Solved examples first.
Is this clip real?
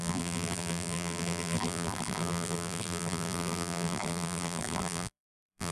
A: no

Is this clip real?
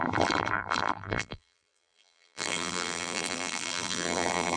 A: no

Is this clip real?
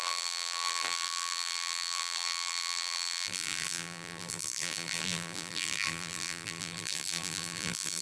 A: no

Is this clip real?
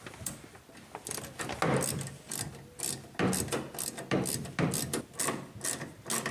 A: yes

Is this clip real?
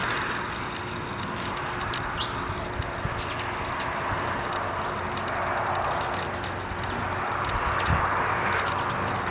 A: yes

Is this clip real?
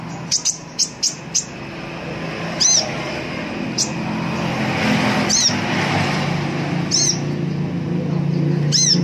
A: yes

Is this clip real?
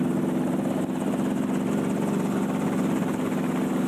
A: yes